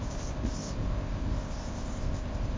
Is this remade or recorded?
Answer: remade